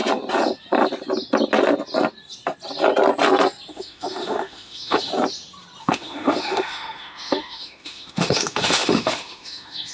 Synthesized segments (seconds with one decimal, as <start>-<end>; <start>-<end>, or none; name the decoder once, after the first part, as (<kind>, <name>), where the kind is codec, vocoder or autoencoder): 3.7-5.1 (autoencoder, DAC-VAE); 5.8-9.9

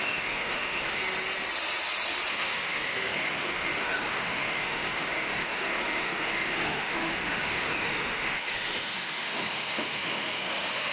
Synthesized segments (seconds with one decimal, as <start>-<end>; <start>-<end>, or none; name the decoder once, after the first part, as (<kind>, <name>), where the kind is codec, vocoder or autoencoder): 0.0-1.0 (autoencoder, DAC-VAE); 2.3-10.9